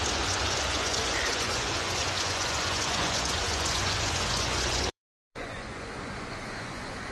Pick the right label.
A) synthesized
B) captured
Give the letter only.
A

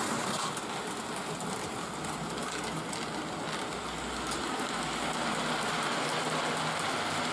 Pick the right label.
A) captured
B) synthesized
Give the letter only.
A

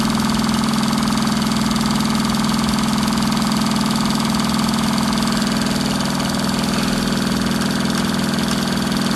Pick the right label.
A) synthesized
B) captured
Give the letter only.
B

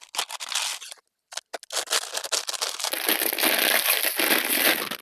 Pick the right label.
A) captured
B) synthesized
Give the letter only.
A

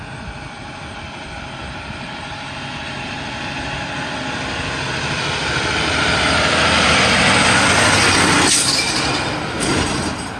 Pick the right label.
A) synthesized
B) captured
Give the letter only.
B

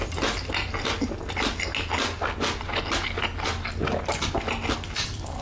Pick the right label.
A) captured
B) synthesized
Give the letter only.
A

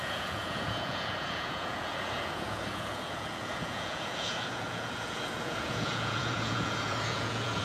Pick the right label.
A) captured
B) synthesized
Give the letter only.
B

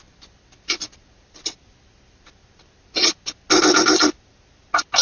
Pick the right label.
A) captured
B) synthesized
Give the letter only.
A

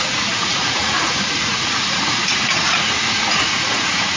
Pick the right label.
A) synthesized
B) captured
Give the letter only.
A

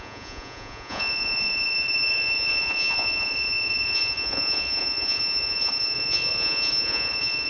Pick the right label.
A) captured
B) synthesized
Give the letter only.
B